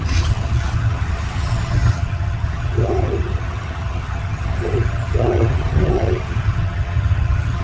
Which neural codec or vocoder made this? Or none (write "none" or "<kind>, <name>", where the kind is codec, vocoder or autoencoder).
vocoder, HiFi-GAN